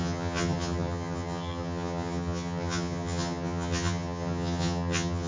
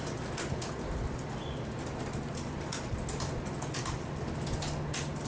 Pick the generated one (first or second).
first